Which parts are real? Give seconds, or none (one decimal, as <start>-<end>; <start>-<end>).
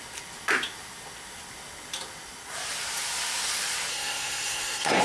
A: 0.0-3.9